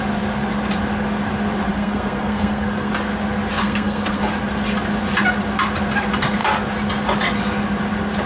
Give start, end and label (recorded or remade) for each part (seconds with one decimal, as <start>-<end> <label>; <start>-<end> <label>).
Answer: 0.0-1.7 recorded; 1.7-2.9 remade; 2.9-3.6 recorded; 3.6-4.2 remade; 4.2-8.3 recorded